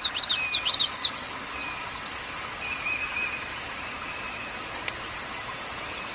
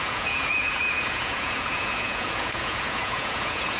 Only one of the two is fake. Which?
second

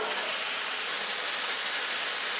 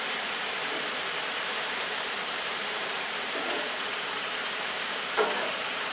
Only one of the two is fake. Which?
second